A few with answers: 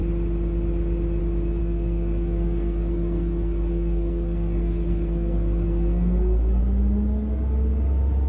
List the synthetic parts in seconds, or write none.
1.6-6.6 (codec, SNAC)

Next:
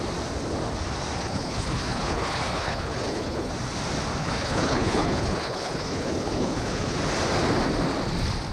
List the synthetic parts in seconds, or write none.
1.2-3.5 (codec, HILCodec); 4.2-7.0

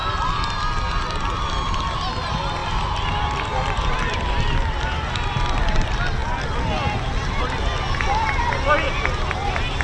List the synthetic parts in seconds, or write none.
0.0-1.0 (vocoder, BigVGAN v2); 2.6-5.1

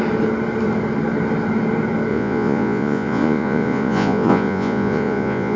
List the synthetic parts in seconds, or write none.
2.1-5.6 (vocoder, Vocos)

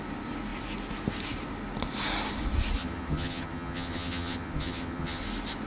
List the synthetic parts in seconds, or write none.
2.8-5.2 (vocoder, HiFi-GAN)